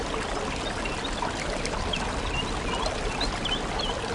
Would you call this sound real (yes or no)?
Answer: yes